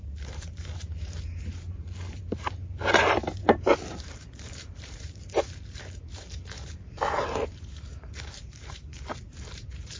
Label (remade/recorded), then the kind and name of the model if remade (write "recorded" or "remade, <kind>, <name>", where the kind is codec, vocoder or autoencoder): remade, vocoder, BigVGAN v2